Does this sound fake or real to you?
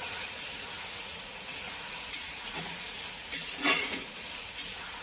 fake